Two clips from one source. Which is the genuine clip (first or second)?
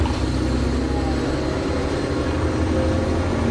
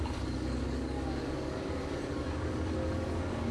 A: first